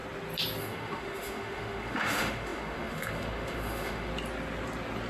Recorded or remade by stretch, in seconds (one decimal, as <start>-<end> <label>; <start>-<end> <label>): 0.0-0.6 recorded; 0.6-4.1 remade; 4.1-5.1 recorded